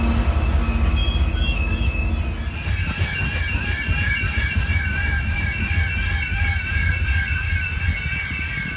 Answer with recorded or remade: recorded